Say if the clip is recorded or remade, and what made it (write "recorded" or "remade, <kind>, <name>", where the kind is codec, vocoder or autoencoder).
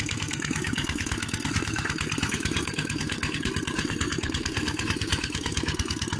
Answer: remade, codec, SNAC